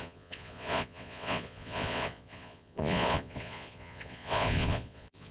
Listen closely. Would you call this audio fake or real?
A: fake